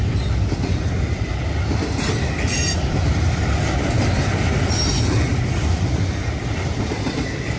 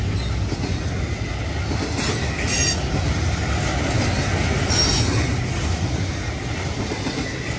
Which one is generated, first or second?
first